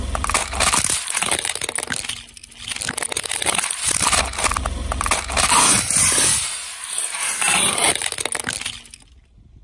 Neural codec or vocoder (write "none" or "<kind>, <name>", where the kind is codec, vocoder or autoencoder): none